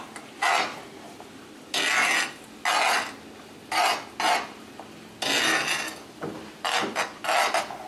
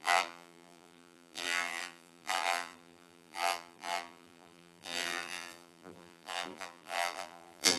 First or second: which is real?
first